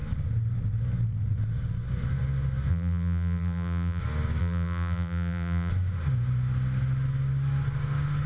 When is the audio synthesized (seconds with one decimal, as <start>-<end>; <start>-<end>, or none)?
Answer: 2.7-4.0; 4.4-5.7